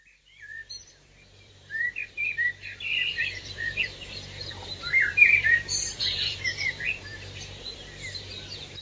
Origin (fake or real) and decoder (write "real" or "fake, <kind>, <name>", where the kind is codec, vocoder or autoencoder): fake, vocoder, BigVGAN v2